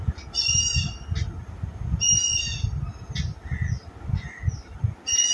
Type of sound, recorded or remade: recorded